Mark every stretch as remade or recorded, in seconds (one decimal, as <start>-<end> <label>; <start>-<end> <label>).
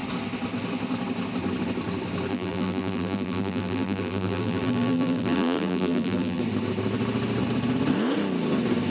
0.0-2.3 recorded; 2.3-6.4 remade; 6.4-8.9 recorded